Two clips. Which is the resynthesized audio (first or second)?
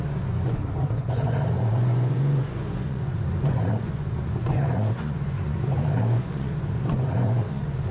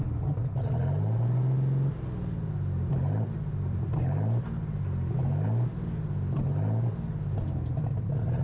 first